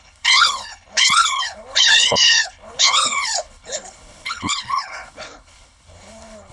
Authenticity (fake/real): fake